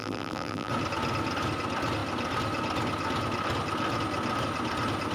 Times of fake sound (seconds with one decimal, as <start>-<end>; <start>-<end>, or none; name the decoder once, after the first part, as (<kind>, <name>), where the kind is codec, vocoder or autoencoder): 0.0-0.7 (vocoder, BigVGAN v2)